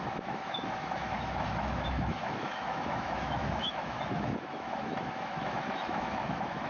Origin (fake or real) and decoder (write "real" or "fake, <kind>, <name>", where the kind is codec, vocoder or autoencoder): fake, autoencoder, DAC-VAE